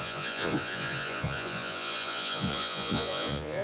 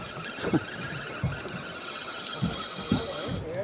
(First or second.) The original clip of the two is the second